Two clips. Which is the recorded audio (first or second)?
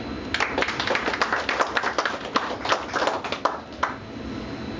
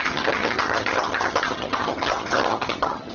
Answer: first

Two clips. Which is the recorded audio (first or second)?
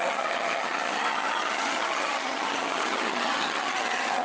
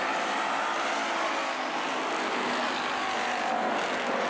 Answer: second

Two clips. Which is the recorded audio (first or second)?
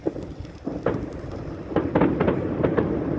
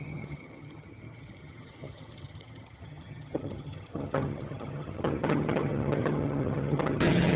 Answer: first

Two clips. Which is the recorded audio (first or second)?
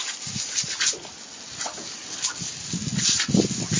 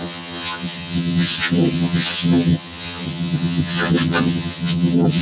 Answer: first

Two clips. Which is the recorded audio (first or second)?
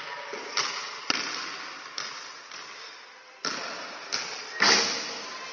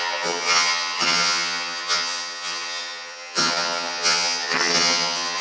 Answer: first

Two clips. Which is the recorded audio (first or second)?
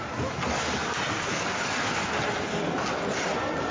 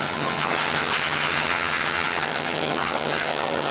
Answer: first